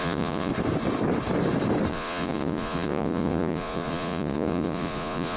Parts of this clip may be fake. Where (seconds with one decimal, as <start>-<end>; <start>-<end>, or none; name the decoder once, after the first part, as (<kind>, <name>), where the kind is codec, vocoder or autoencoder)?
0.0-0.5 (vocoder, Vocos); 1.9-5.4